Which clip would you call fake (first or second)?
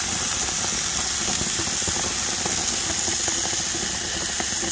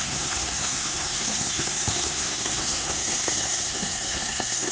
second